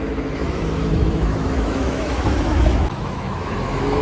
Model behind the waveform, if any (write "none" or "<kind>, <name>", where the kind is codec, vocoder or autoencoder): autoencoder, DAC-VAE